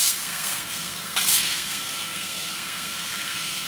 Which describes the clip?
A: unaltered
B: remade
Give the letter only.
B